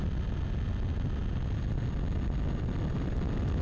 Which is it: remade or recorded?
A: recorded